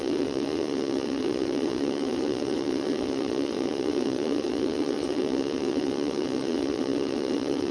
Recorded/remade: remade